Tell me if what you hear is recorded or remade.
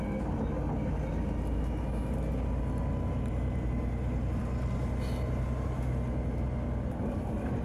recorded